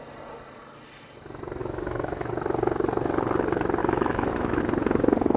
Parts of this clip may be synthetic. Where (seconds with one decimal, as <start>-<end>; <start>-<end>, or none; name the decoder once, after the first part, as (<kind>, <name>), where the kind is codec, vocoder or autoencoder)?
1.6-2.3 (autoencoder, DAC-VAE); 3.8-4.6